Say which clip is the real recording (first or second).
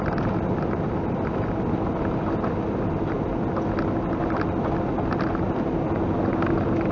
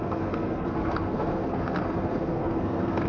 first